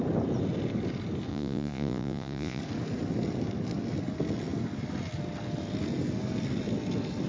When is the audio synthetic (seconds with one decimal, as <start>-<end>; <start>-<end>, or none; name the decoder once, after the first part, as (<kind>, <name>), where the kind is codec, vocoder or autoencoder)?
1.3-2.6 (vocoder, Vocos)